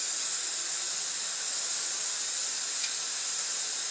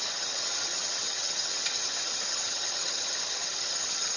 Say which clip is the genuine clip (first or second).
first